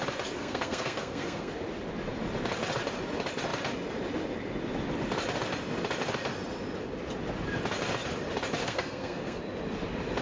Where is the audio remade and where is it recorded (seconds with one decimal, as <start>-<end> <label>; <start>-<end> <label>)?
0.0-0.4 recorded; 0.4-1.5 remade; 1.5-8.6 recorded; 8.6-9.4 remade; 9.4-10.2 recorded